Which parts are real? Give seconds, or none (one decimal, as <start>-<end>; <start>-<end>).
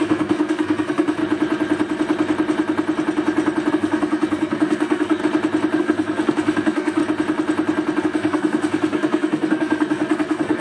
1.2-3.7; 5.2-5.8; 7.0-8.0